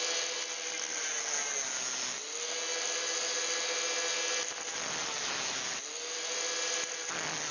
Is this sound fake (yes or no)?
no